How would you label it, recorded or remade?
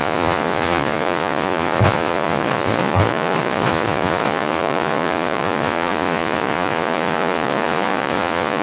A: remade